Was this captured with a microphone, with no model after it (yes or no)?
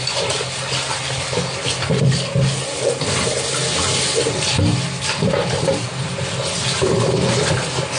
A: yes